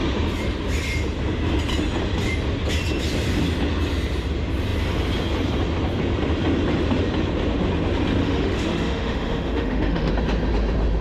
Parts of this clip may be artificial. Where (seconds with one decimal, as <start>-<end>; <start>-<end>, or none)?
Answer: 8.2-10.1